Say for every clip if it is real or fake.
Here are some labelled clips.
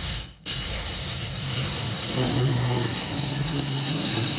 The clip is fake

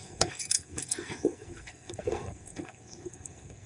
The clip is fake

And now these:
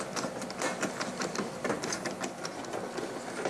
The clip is real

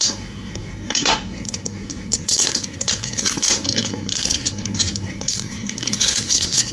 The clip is fake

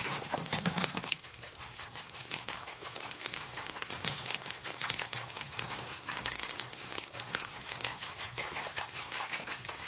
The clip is fake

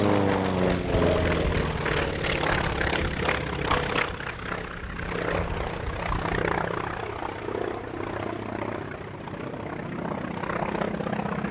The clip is real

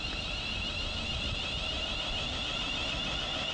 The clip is real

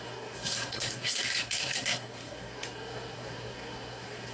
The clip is fake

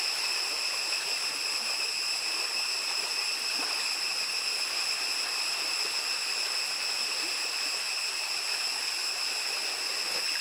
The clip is real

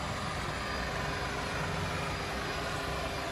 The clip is real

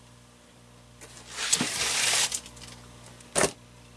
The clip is real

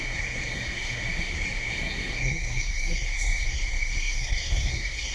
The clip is fake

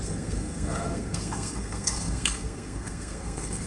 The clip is fake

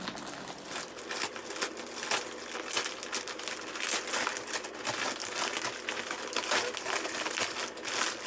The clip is real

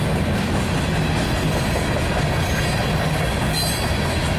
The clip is real